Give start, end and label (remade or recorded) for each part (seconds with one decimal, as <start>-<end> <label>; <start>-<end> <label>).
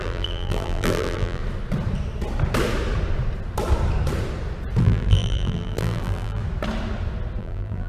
0.0-1.4 remade; 1.4-4.8 recorded; 4.8-6.4 remade; 6.4-7.4 recorded; 7.4-7.9 remade